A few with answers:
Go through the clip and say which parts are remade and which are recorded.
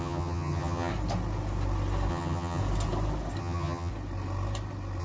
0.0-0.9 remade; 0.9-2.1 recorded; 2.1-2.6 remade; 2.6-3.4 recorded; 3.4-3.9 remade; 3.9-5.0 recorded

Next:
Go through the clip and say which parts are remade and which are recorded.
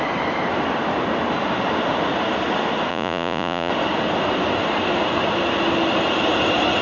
0.0-2.9 recorded; 2.9-3.7 remade; 3.7-6.8 recorded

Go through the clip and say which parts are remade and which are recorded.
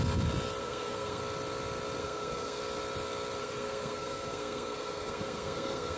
0.0-0.6 recorded; 0.6-1.2 remade; 1.2-2.0 recorded; 2.0-2.6 remade; 2.6-3.4 recorded; 3.4-6.0 remade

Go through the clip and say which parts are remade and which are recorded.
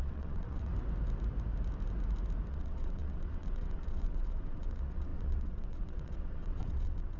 0.0-0.7 remade; 0.7-2.5 recorded; 2.5-7.2 remade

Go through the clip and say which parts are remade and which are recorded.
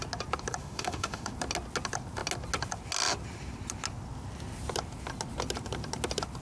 0.0-0.6 recorded; 0.6-1.3 remade; 1.3-6.4 recorded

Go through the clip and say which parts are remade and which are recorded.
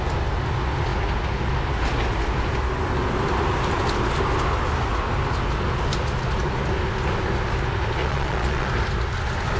0.0-8.0 recorded; 8.0-8.7 remade; 8.7-9.6 recorded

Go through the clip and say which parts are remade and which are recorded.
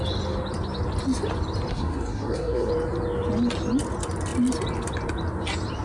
0.0-1.7 recorded; 1.7-2.7 remade; 2.7-5.8 recorded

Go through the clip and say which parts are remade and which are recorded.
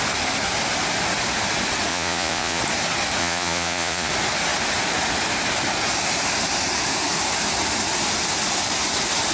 0.0-1.9 recorded; 1.9-2.6 remade; 2.6-3.2 recorded; 3.2-4.1 remade; 4.1-9.3 recorded